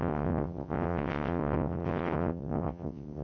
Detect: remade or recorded remade